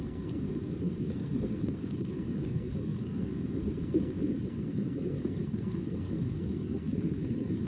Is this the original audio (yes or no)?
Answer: no